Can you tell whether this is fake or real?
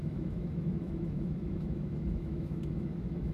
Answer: fake